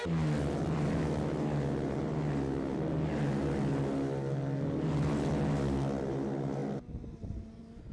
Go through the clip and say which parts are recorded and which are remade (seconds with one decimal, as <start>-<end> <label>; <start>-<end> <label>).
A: 0.0-7.9 recorded

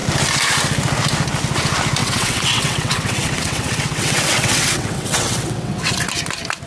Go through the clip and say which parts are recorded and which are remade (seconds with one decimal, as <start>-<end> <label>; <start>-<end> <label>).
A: 0.0-2.0 recorded; 2.0-6.0 remade; 6.0-6.7 recorded

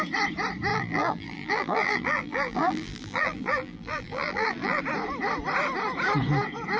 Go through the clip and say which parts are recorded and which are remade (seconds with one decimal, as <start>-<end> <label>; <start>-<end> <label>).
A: 0.0-0.7 recorded; 0.7-4.8 remade; 4.8-6.8 recorded

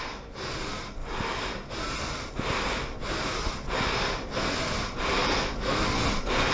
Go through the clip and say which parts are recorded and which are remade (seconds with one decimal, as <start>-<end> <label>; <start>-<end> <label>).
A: 0.0-6.5 recorded

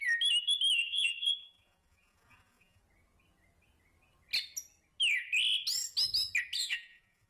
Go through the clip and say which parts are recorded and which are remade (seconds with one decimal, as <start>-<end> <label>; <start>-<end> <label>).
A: 0.0-0.8 recorded; 0.8-2.8 remade; 2.8-6.6 recorded; 6.6-7.3 remade